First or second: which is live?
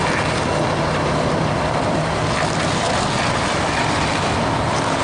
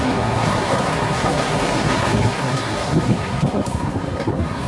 first